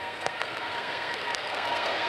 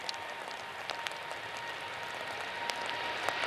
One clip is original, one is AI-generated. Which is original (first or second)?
second